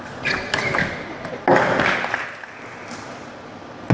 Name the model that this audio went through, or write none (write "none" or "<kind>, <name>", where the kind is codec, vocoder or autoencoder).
none